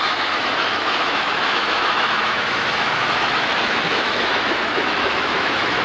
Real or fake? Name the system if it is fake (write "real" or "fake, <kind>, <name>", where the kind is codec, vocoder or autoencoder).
fake, autoencoder, DAC-VAE